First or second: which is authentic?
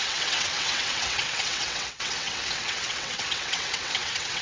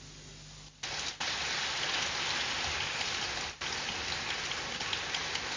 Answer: second